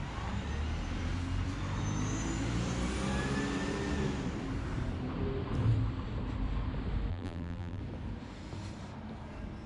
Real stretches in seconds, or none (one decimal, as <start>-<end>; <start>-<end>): 0.0-7.1; 7.8-9.7